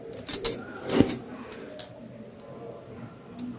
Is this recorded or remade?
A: recorded